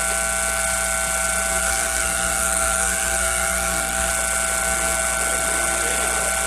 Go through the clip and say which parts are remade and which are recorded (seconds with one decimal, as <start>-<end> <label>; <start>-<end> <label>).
0.0-1.6 recorded; 1.6-4.1 remade; 4.1-6.5 recorded

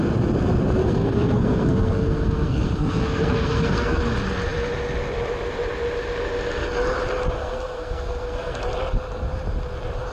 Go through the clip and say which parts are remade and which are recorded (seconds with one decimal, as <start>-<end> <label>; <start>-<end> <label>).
0.0-0.8 recorded; 0.8-4.0 remade; 4.0-7.4 recorded; 7.4-8.6 remade; 8.6-10.1 recorded

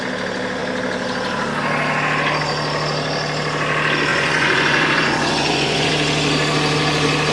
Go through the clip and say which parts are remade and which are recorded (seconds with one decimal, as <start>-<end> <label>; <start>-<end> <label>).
0.0-4.1 recorded; 4.1-5.9 remade; 5.9-7.3 recorded

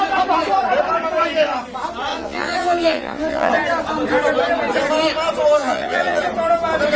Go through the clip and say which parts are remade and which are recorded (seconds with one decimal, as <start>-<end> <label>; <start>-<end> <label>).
0.0-2.1 recorded; 2.1-3.5 remade; 3.5-5.6 recorded; 5.6-6.2 remade; 6.2-7.0 recorded

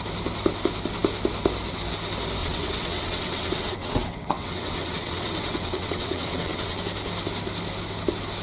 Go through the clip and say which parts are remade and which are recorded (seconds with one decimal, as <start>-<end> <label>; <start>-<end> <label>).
0.0-2.4 recorded; 2.4-6.8 remade; 6.8-8.4 recorded